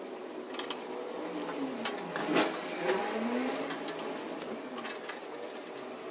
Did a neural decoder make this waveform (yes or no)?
no